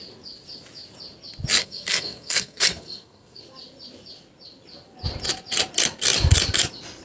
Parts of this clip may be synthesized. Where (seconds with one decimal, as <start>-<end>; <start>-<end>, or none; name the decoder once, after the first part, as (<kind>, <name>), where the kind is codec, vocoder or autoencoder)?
1.6-3.4 (codec, SNAC)